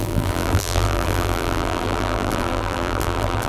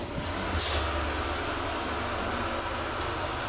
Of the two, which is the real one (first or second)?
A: second